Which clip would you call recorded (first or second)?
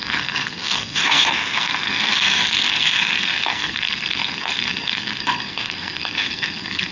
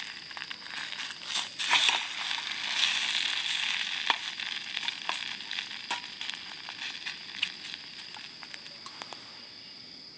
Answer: second